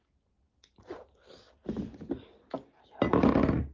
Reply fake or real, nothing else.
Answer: real